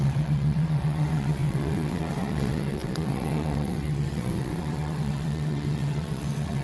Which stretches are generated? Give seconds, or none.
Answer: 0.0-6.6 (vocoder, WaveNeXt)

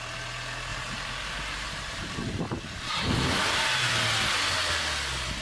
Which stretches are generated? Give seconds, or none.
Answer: 0.7-3.9 (vocoder, BigVGAN v2)